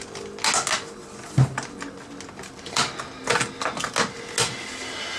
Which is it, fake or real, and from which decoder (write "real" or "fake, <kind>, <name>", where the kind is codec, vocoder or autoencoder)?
real